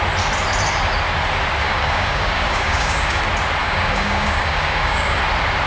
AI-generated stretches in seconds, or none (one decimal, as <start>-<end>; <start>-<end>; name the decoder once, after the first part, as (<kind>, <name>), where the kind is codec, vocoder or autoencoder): 1.6-3.2 (codec, DAC); 3.6-5.2